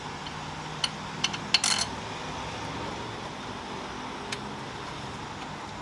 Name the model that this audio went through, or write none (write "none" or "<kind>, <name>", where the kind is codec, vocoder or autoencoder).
none